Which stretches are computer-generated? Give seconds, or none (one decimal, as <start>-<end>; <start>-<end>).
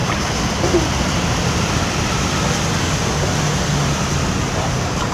0.0-2.3